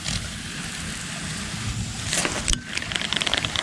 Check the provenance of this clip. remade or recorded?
recorded